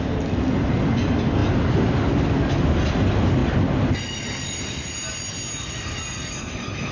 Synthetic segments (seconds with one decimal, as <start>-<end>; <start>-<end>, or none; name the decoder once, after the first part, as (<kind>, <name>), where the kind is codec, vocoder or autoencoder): none